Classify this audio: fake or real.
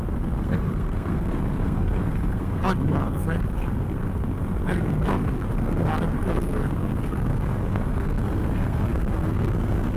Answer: fake